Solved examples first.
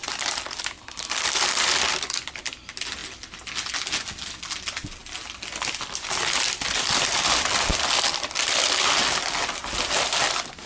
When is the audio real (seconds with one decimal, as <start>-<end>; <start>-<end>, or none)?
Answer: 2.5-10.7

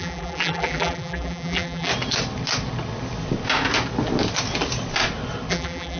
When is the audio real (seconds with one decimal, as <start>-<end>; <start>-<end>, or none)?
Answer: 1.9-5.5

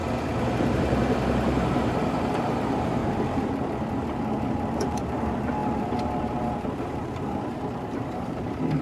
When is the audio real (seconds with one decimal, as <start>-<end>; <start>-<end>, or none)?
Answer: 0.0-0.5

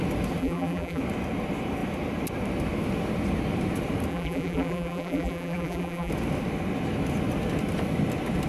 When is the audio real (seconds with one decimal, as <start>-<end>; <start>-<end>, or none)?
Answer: 0.0-0.4; 1.0-4.1; 6.1-8.5

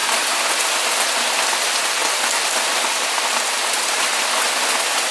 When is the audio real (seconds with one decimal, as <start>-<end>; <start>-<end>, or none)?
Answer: 0.0-5.1

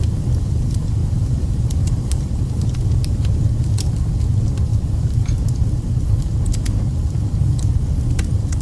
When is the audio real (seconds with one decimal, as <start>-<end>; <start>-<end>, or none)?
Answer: 0.0-1.0; 3.9-4.7; 5.6-8.6

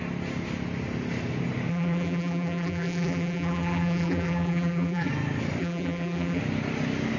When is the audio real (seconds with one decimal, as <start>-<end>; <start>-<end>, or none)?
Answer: 0.0-1.7; 5.1-5.6; 6.4-7.2